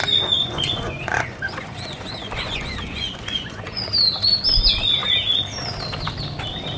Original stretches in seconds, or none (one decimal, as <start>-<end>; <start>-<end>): 0.0-0.4; 3.9-6.8